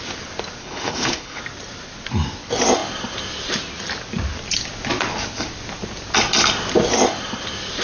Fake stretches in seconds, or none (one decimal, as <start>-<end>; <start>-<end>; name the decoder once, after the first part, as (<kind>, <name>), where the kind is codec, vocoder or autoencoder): 0.6-1.4 (codec, HILCodec)